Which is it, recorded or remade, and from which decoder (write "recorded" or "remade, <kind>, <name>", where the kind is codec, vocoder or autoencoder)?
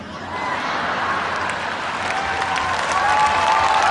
recorded